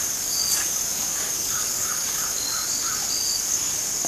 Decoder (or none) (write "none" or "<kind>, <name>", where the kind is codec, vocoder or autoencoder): codec, DAC